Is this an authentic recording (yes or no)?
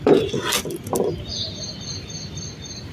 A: yes